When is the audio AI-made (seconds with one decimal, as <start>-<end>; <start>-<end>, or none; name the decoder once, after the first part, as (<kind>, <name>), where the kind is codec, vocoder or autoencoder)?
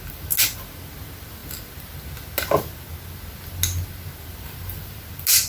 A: none